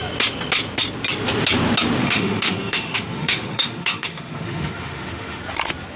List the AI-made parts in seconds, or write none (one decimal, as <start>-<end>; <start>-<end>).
2.0-5.4